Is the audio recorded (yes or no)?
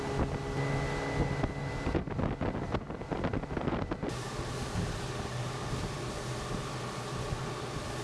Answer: yes